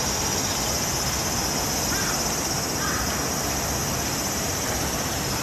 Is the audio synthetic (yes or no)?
no